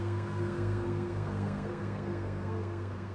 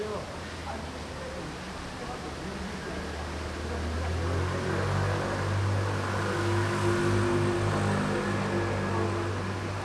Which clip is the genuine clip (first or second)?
second